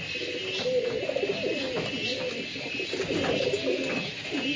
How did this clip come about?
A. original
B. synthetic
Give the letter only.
A